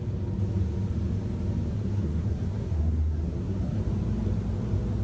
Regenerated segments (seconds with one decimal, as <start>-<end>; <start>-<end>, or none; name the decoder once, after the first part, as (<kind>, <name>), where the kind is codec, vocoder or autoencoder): 1.7-3.8 (codec, SNAC)